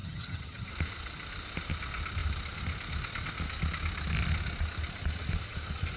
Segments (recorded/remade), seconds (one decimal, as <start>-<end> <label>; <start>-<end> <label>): 0.0-0.7 remade; 0.7-6.0 recorded